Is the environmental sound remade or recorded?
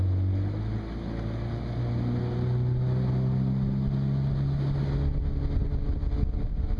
recorded